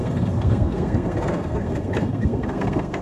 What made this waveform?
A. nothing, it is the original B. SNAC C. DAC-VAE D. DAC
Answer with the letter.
B